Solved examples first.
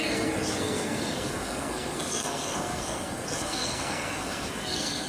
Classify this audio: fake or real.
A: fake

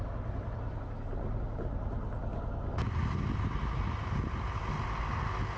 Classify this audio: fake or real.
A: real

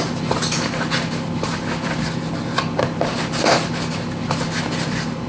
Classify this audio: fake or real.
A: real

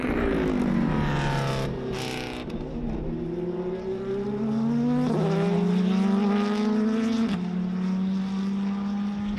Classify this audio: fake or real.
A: real